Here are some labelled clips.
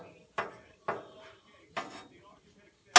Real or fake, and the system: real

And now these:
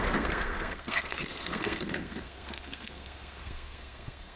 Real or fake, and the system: fake, codec, SNAC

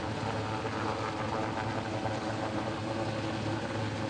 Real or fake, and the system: real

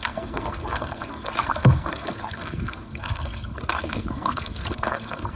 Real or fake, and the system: fake, codec, SNAC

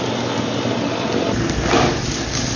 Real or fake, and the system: real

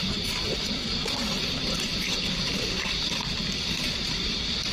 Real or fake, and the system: real